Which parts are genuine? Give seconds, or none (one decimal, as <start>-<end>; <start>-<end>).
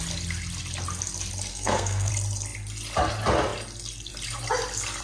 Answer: 0.0-1.5; 2.1-5.0